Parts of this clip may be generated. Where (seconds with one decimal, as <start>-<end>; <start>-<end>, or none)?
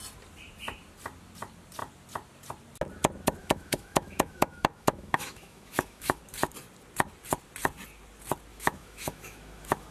3.4-6.2; 8.5-9.9